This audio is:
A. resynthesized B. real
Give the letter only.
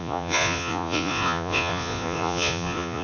A